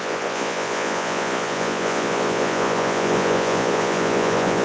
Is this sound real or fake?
fake